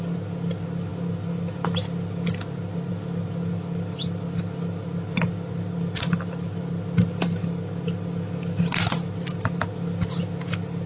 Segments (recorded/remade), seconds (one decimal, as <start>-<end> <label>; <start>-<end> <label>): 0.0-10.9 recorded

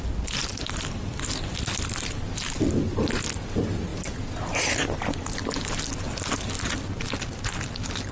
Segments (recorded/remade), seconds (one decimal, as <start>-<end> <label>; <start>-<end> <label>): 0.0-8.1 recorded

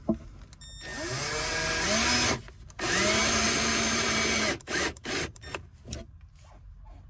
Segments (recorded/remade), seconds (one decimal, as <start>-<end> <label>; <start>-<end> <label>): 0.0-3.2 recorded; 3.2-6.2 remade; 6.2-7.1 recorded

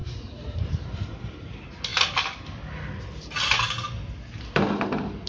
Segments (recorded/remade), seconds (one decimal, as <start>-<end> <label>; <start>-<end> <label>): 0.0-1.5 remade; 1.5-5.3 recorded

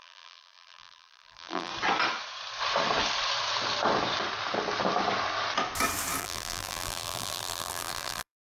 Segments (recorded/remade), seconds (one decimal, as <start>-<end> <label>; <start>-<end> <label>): 0.0-1.7 remade; 1.7-6.2 recorded; 6.2-8.4 remade

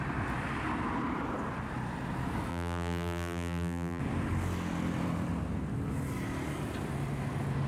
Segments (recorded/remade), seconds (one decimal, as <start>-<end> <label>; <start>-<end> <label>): 0.0-2.5 recorded; 2.5-4.0 remade; 4.0-7.7 recorded

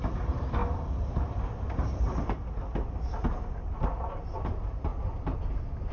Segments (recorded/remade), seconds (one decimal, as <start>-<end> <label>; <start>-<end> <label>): 0.0-5.9 recorded

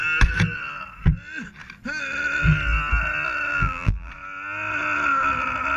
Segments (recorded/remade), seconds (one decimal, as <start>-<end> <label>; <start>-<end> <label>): 0.0-3.5 recorded; 3.5-4.1 remade; 4.1-5.8 recorded